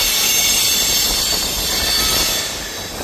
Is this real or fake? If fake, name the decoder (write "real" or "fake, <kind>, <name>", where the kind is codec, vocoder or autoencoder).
real